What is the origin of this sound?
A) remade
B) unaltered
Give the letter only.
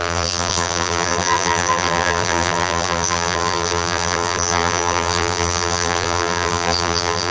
A